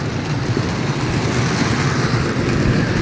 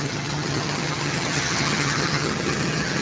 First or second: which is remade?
second